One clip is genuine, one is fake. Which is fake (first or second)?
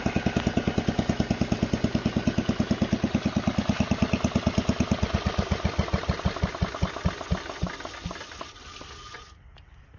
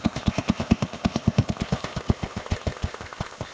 second